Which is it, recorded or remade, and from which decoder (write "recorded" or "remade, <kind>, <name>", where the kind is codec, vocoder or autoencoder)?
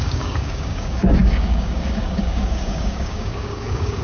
remade, codec, DAC